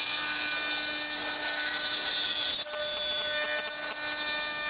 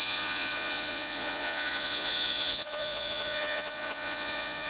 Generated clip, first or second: second